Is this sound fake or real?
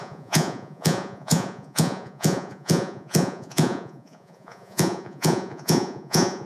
fake